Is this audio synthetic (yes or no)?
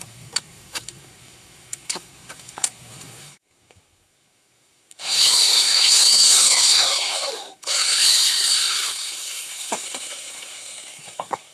yes